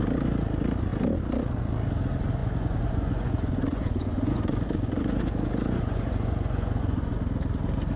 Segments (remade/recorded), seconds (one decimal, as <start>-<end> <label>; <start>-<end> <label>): 0.0-2.4 recorded; 2.4-7.2 remade; 7.2-8.0 recorded